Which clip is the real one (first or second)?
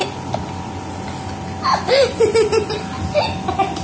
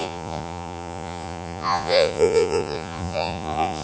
first